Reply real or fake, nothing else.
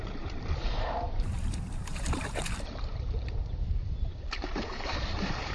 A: fake